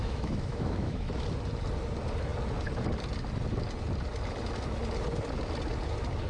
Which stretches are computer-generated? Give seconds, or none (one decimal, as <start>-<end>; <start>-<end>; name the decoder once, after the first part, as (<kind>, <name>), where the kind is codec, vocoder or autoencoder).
0.0-1.1 (autoencoder, DAC-VAE)